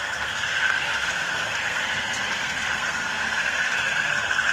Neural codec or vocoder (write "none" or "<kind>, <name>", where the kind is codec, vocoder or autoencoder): codec, SNAC